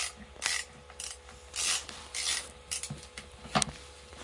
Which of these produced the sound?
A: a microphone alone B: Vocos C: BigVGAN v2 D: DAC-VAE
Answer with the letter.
A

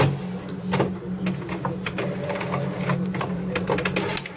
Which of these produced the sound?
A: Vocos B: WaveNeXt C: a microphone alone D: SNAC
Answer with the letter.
C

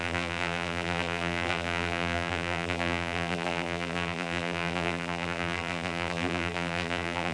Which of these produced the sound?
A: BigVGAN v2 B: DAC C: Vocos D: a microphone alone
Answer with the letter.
A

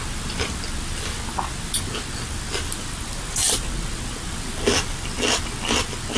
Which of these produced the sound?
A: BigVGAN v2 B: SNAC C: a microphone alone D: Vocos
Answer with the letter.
C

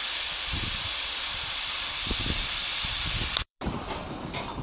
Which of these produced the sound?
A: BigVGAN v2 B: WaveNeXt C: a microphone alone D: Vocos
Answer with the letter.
A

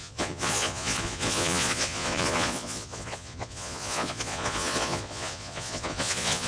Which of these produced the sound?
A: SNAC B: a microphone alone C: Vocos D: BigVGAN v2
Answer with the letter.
C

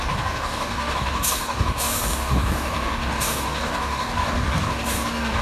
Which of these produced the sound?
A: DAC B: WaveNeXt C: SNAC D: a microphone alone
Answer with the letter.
A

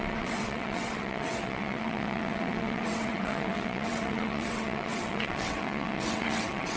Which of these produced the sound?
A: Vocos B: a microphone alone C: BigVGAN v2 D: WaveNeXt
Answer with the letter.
D